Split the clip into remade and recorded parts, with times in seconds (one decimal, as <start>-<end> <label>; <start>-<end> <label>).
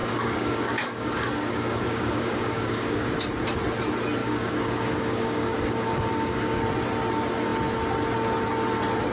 0.0-3.1 remade; 3.1-4.2 recorded; 4.2-6.6 remade; 6.6-9.1 recorded